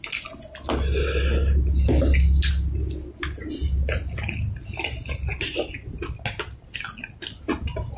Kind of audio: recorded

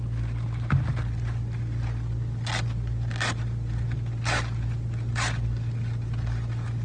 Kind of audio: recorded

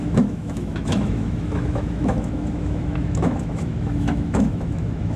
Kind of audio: remade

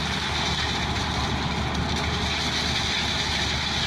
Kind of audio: recorded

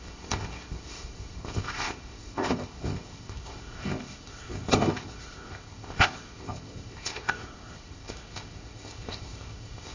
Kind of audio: remade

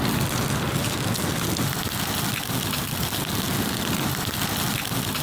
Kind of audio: recorded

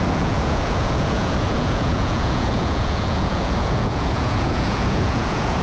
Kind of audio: remade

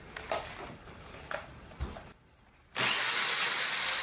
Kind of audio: recorded